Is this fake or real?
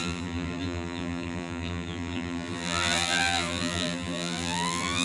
fake